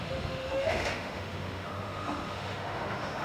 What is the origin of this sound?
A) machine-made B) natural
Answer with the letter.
A